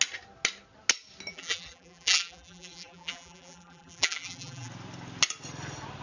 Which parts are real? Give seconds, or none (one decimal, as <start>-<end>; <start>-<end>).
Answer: 0.0-1.3; 4.7-6.0